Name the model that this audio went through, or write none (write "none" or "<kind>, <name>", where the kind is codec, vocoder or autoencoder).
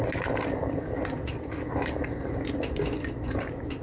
none